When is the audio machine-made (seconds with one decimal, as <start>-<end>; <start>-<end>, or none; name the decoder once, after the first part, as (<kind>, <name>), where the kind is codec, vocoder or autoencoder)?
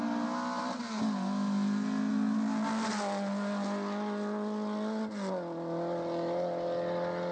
none